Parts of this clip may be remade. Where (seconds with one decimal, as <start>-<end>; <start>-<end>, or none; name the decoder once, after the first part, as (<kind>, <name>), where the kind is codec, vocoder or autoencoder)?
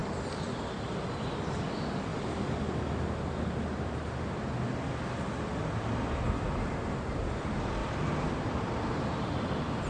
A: none